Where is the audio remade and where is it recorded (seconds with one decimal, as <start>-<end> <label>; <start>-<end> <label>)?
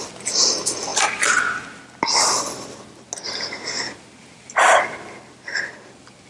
0.0-6.3 recorded